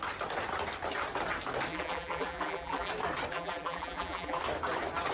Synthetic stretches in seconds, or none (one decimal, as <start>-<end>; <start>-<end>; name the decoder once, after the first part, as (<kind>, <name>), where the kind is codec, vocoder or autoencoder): 1.7-2.9 (vocoder, BigVGAN v2); 3.3-4.4